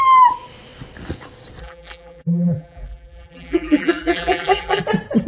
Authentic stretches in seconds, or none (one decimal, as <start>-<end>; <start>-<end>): 0.0-1.6; 4.8-5.3